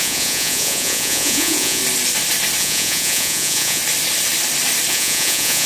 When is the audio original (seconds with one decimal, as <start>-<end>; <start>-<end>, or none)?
1.8-2.6; 3.8-4.9